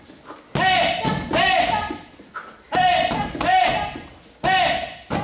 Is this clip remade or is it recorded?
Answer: recorded